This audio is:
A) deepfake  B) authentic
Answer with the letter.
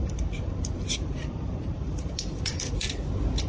A